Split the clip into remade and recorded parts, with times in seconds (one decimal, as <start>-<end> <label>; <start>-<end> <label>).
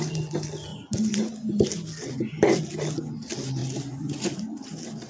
0.0-5.1 recorded